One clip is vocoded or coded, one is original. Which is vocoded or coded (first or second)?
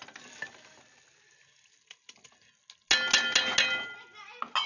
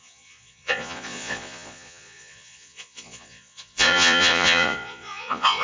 second